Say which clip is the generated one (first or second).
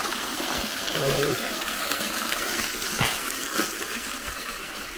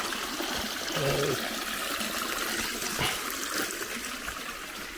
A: first